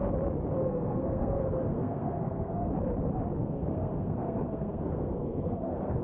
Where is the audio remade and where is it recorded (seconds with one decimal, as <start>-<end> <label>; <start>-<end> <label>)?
0.0-0.6 recorded; 0.6-2.7 remade; 2.7-3.4 recorded; 3.4-6.0 remade